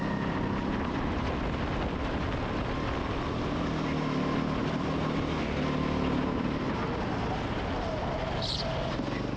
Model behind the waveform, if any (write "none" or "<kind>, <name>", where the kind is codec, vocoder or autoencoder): none